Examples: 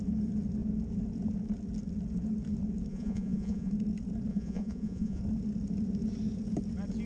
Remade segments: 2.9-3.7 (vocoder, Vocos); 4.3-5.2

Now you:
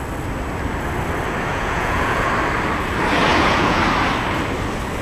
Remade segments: 1.5-2.3 (vocoder, Vocos); 3.3-3.8

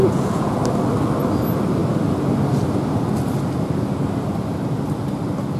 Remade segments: 0.0-0.6 (vocoder, Vocos)

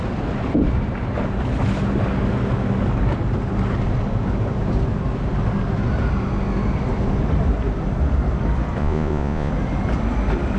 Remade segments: 8.8-9.5 (vocoder, Vocos)